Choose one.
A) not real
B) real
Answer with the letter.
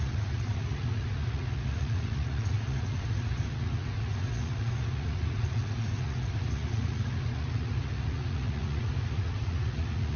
A